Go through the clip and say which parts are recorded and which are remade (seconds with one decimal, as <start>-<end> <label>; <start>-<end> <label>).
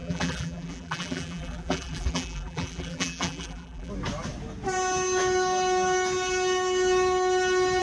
0.0-3.9 remade; 3.9-7.8 recorded